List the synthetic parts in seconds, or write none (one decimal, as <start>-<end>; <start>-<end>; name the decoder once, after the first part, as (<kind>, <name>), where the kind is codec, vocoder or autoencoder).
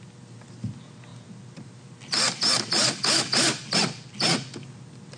none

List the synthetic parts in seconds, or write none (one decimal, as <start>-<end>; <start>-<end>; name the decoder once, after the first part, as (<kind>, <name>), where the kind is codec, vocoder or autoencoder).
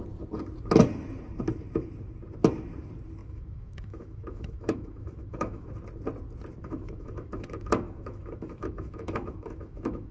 3.2-5.7 (autoencoder, DAC-VAE); 6.6-10.1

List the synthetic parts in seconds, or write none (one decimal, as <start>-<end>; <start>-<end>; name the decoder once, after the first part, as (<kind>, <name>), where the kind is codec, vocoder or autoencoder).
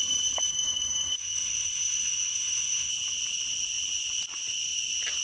0.5-2.9 (autoencoder, DAC-VAE)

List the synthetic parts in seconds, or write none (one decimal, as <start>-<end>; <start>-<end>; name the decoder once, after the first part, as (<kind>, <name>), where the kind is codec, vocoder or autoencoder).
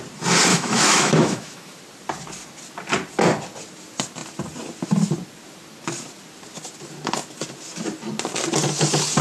0.5-1.8 (autoencoder, DAC-VAE)